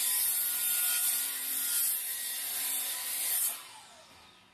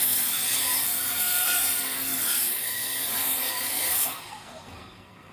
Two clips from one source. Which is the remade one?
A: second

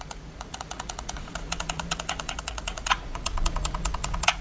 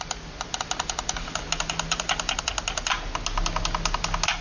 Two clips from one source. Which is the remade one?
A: first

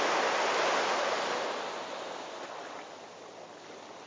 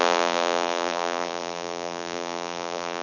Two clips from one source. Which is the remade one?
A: second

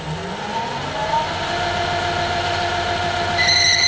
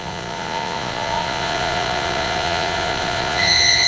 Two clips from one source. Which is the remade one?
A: second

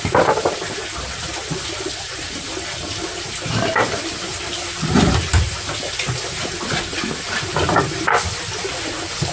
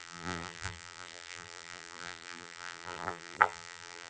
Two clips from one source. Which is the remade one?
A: second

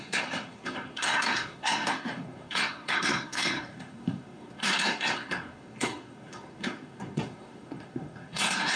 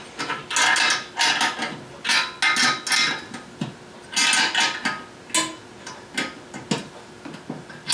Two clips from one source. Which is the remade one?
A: first